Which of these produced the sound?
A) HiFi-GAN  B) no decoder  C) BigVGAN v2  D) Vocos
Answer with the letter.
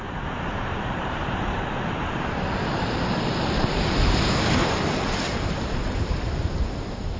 C